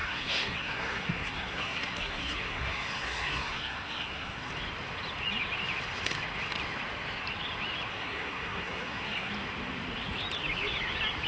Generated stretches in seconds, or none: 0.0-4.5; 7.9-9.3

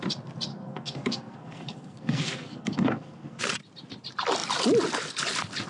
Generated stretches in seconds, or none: 0.5-3.4

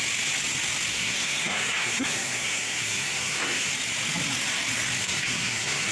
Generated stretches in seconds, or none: 0.9-3.7; 5.0-5.9

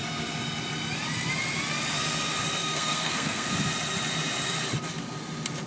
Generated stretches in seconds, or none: 2.6-3.5